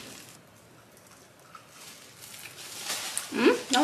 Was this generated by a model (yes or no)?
no